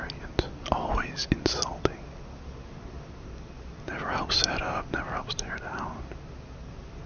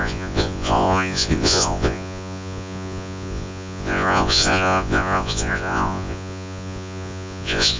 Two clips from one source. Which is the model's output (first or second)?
second